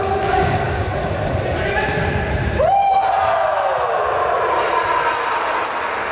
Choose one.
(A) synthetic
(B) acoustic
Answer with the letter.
B